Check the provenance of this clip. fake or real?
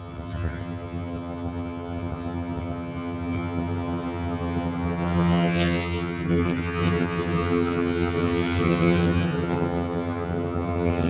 fake